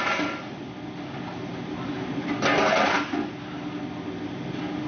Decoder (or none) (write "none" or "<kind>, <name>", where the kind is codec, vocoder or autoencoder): none